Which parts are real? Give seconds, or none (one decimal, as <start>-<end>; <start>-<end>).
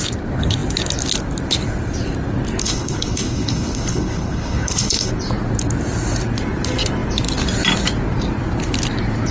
0.0-2.6; 5.1-9.3